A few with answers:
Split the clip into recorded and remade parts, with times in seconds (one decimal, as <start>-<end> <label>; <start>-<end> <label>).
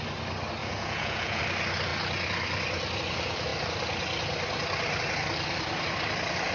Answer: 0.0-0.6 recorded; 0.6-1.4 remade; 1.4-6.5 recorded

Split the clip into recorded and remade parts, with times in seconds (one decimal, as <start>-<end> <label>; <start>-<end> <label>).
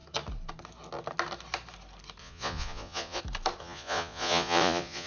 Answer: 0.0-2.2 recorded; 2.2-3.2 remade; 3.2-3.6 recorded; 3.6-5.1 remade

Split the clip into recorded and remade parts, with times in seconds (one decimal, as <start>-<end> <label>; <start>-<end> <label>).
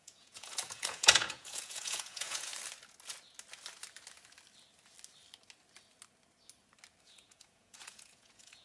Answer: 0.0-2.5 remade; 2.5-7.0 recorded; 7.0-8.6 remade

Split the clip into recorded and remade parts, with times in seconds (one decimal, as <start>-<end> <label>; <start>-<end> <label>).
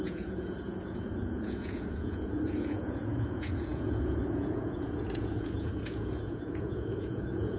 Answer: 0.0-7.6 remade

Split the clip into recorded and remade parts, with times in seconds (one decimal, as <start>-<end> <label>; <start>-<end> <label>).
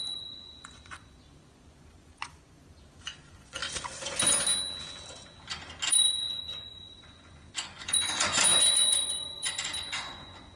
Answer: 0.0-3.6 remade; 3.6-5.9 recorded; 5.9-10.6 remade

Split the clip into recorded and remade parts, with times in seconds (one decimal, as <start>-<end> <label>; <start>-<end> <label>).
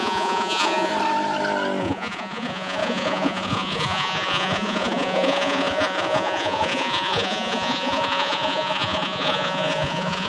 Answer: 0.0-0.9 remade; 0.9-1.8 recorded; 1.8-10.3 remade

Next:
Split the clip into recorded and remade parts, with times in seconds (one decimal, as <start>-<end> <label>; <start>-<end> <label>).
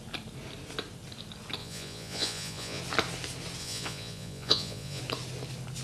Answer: 0.0-1.6 recorded; 1.6-2.8 remade; 2.8-3.6 recorded; 3.6-5.0 remade; 5.0-5.8 recorded